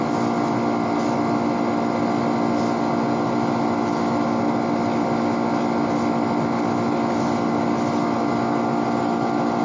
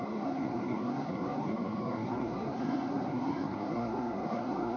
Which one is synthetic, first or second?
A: second